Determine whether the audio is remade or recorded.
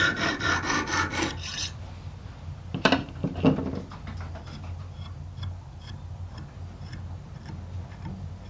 remade